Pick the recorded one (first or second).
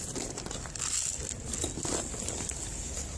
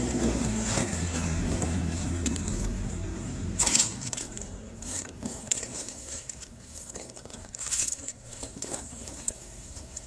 first